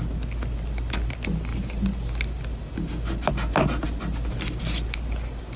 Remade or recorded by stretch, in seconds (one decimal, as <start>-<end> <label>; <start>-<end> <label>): 0.0-5.6 recorded